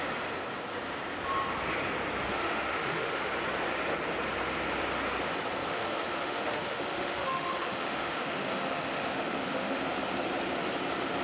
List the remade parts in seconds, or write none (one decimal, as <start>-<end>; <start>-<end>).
2.2-3.2; 5.7-9.8